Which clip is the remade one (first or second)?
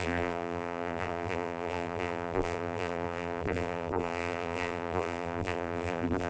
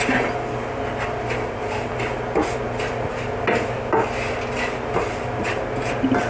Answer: first